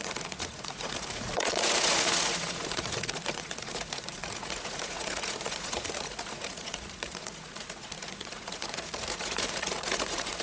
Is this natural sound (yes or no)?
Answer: no